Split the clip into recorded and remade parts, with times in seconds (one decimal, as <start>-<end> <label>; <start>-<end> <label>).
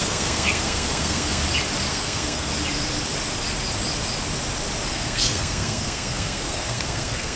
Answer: 0.0-1.4 remade; 1.4-1.9 recorded; 1.9-2.5 remade; 2.5-4.9 recorded; 4.9-7.4 remade